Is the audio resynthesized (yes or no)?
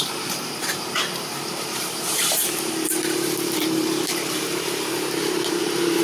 yes